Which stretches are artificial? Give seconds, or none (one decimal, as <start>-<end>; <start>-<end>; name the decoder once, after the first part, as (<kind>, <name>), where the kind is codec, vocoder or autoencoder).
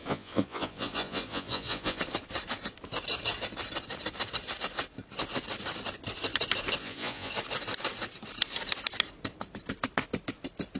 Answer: 0.0-2.0 (vocoder, Vocos); 6.8-7.3